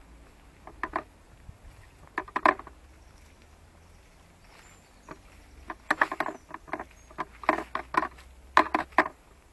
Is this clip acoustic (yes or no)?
yes